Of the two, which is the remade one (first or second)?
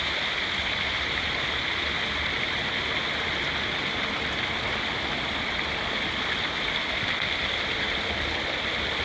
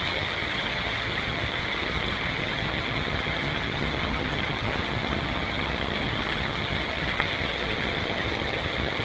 second